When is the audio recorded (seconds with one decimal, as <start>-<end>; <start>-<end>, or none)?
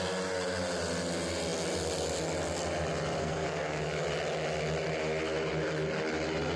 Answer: 0.0-3.2; 3.8-6.6